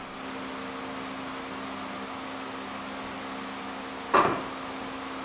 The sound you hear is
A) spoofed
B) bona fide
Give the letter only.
B